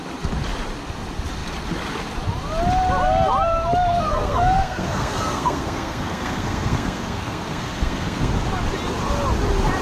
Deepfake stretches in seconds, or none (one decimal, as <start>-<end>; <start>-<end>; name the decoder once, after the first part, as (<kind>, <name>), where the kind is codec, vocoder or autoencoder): 3.9-8.3 (codec, SNAC)